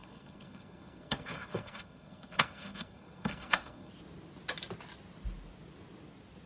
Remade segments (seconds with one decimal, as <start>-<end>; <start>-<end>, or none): 0.0-3.9